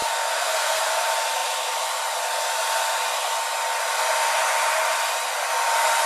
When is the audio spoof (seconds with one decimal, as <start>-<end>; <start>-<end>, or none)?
0.0-0.8